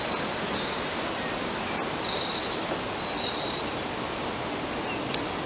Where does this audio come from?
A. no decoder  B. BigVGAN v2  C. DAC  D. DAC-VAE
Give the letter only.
B